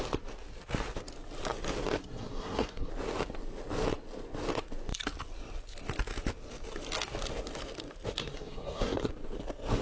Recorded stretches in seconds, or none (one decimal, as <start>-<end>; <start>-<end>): 0.0-2.0; 2.9-8.2; 9.1-9.8

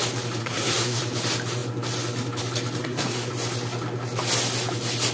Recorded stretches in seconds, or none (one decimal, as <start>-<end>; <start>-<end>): 0.0-0.4; 1.0-2.8; 3.3-5.1